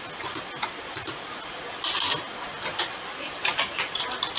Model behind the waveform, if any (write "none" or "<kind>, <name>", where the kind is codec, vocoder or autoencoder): none